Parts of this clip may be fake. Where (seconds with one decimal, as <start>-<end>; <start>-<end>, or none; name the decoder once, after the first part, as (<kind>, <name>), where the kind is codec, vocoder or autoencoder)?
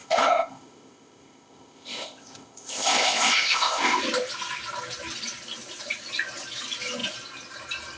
0.0-4.0 (codec, ZipCodec)